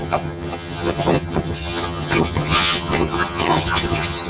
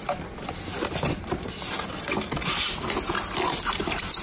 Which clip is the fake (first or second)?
first